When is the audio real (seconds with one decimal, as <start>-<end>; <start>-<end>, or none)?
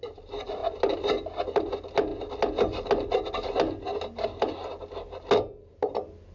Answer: 0.0-6.3